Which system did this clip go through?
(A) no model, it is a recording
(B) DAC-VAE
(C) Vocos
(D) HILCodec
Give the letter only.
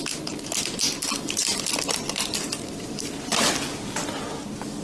A